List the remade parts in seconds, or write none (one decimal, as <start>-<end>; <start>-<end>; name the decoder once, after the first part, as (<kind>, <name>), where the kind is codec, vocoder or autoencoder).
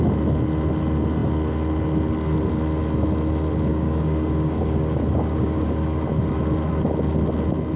3.7-6.1 (codec, DAC)